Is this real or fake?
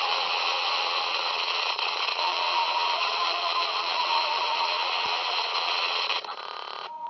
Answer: fake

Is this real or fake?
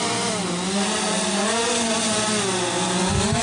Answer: real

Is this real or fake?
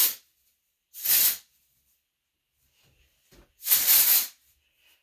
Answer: real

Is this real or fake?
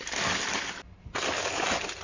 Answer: real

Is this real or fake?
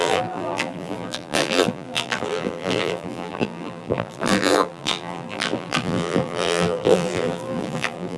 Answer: fake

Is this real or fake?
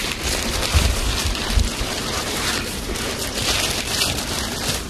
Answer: fake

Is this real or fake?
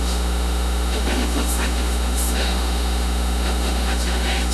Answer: fake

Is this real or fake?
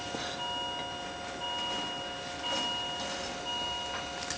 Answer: real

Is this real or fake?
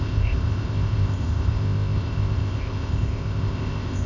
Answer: fake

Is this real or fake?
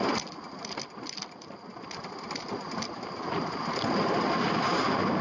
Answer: real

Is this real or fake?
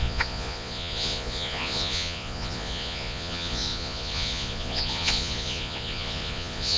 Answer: fake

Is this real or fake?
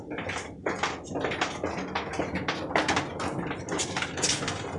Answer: real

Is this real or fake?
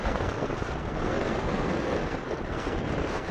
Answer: fake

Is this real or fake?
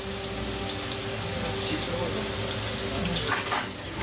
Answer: real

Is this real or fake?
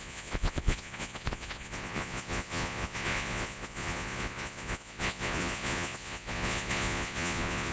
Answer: fake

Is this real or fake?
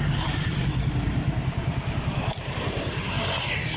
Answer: real